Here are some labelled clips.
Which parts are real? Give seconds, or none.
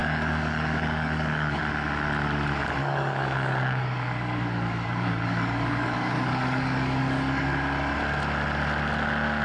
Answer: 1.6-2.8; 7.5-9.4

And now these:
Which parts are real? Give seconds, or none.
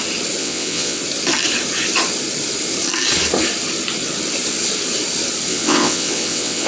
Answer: 0.0-0.4; 1.0-5.5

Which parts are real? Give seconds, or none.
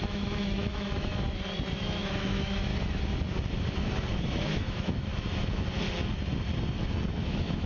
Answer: 1.1-1.7; 2.7-4.1; 5.1-7.2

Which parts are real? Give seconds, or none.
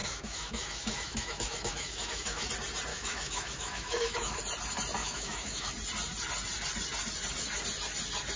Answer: 2.5-2.9; 4.4-5.0; 5.7-8.4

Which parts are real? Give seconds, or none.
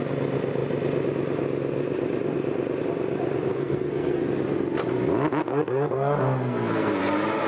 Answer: 0.0-3.5; 4.2-5.4; 7.0-7.5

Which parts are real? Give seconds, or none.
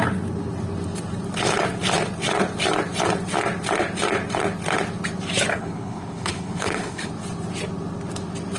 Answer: 0.0-5.5; 7.1-8.6